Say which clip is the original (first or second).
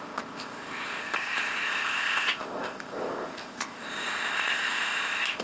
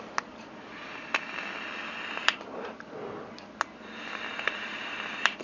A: second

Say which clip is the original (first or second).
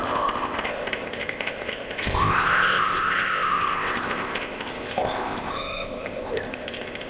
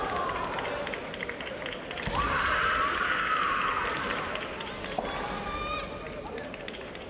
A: second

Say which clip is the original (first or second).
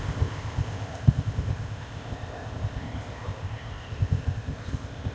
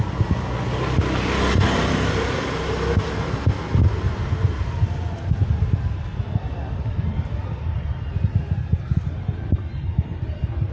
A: second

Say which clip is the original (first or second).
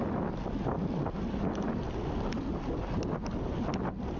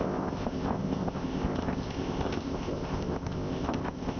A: first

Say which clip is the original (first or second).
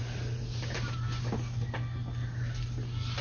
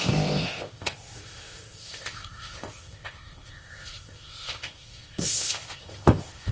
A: first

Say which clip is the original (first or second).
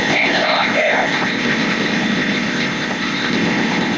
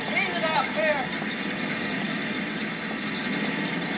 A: second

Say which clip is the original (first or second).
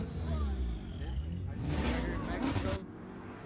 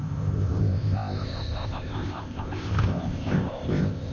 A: first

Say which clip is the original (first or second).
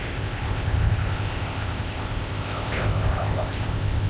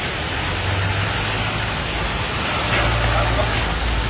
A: second